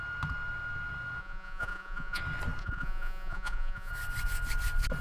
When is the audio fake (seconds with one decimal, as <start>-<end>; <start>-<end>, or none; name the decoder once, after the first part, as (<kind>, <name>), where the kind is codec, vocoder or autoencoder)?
1.2-2.2 (vocoder, Vocos); 2.6-3.9